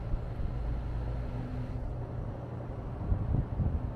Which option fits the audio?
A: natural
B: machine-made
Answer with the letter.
A